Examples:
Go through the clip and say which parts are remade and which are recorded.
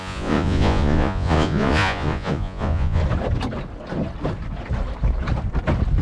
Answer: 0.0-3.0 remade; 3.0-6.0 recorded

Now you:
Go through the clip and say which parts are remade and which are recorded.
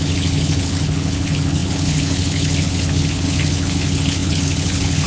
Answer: 0.0-5.1 remade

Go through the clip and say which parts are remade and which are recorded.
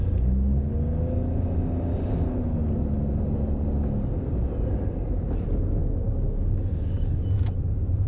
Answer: 0.0-5.8 recorded; 5.8-7.2 remade; 7.2-8.1 recorded